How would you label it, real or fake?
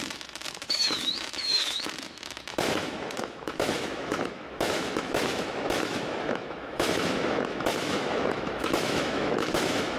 fake